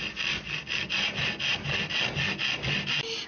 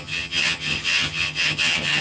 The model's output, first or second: second